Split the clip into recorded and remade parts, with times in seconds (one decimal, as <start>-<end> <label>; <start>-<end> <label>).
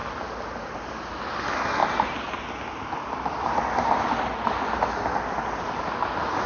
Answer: 0.0-6.5 recorded